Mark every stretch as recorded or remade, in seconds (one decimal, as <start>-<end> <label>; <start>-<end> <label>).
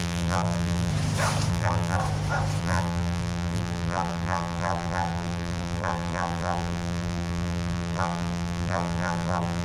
0.0-0.9 remade; 0.9-1.5 recorded; 1.5-2.0 remade; 2.0-2.6 recorded; 2.6-9.6 remade